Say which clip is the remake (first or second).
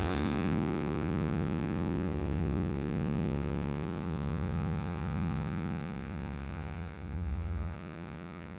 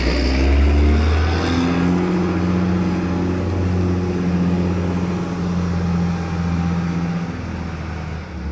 first